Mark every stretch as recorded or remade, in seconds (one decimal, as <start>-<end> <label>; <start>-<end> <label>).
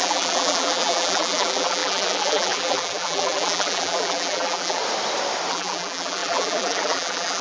0.0-4.8 remade; 4.8-5.5 recorded; 5.5-7.4 remade